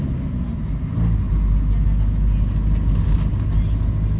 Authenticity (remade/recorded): recorded